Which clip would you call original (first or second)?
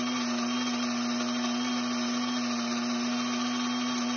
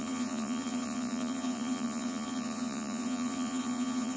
first